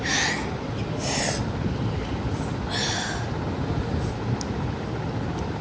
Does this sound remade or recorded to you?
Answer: recorded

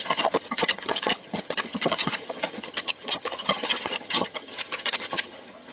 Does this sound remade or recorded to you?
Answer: remade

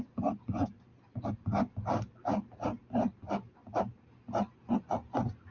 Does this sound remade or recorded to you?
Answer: recorded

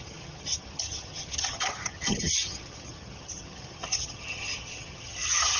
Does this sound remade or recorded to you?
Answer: remade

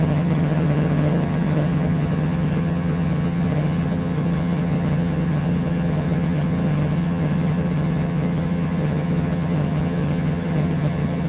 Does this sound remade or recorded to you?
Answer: remade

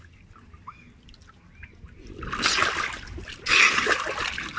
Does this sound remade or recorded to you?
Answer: recorded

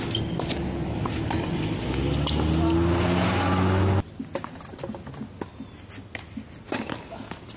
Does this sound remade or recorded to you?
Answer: recorded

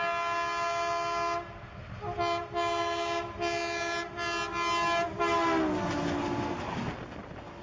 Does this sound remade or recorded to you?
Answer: recorded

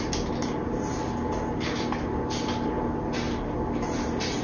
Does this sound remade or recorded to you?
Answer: recorded